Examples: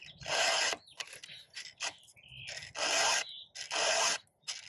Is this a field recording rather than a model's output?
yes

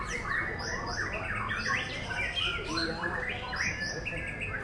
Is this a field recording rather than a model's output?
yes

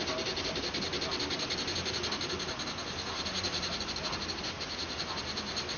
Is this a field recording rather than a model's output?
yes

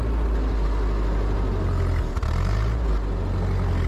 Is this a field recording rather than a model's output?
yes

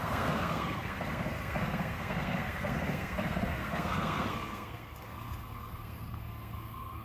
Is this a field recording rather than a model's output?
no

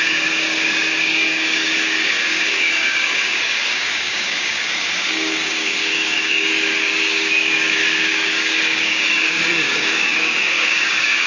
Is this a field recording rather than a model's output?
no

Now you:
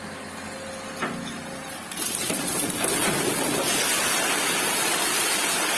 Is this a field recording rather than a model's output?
yes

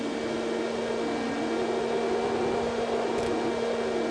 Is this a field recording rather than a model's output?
yes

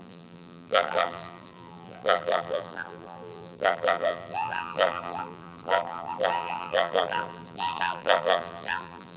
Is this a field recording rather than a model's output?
no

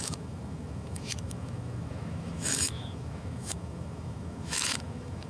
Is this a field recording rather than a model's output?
no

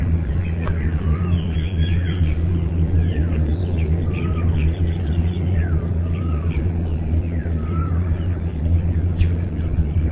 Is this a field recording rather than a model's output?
no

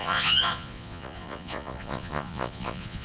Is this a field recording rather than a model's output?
no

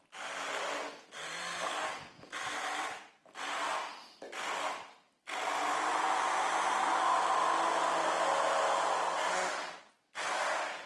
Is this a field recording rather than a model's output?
yes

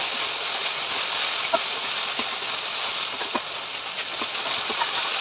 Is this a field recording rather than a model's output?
yes